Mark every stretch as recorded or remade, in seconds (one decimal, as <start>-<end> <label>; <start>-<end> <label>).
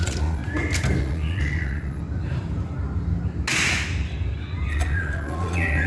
0.0-0.4 remade; 0.4-1.0 recorded; 1.0-2.0 remade; 2.0-4.7 recorded; 4.7-5.9 remade